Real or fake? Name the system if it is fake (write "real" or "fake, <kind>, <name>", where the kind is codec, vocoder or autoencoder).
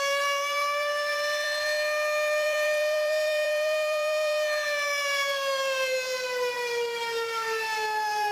fake, vocoder, BigVGAN v2